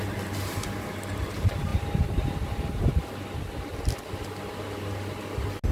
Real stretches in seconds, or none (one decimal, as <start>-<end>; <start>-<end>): 0.0-5.7